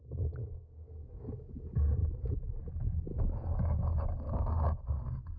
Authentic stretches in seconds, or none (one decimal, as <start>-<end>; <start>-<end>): 0.0-0.4; 1.6-3.1